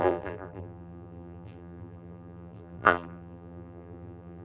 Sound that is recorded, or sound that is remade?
remade